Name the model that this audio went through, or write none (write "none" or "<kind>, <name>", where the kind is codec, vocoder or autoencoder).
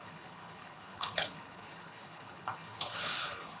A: codec, HILCodec